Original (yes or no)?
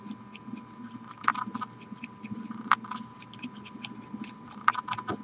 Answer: yes